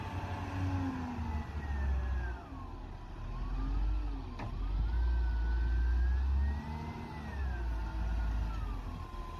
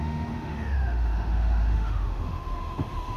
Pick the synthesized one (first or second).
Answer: second